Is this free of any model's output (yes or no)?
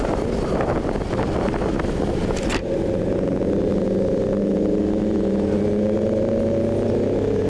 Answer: yes